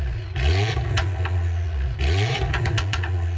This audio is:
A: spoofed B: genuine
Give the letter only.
A